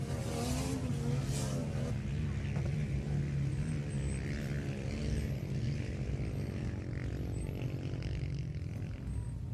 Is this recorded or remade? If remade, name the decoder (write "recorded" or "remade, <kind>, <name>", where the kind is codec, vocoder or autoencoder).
recorded